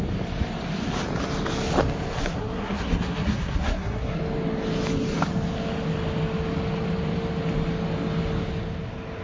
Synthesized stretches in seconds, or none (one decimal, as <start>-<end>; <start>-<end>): 2.2-4.2

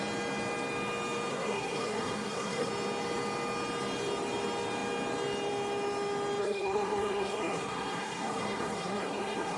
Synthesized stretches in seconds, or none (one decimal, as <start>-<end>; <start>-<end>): 1.3-2.7; 6.4-9.6

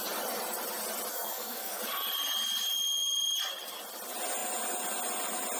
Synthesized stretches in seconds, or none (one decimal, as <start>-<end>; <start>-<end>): 1.1-1.8

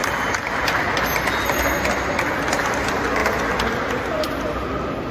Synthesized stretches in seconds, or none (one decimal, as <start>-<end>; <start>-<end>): none

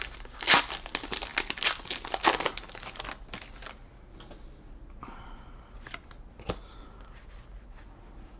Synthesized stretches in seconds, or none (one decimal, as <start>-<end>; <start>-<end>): none

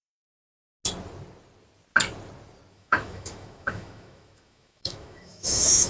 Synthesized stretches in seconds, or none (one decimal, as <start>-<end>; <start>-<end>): 0.0-0.4; 2.7-5.9